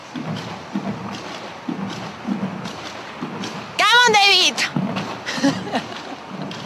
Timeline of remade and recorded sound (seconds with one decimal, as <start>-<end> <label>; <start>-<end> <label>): 0.0-6.7 recorded